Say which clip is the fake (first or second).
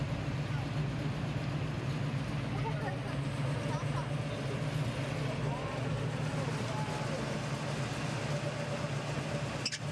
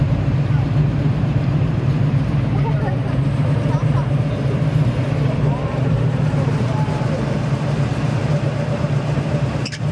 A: second